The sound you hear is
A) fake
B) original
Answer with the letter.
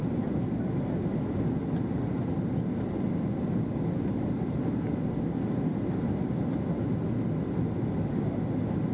B